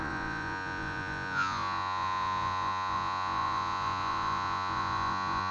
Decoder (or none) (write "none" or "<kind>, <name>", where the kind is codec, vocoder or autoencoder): vocoder, Vocos